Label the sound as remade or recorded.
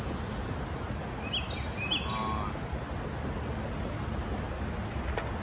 recorded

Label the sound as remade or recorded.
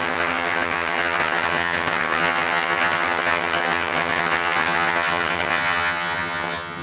remade